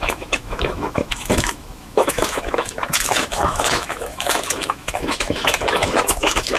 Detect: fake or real fake